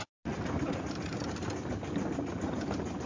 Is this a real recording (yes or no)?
yes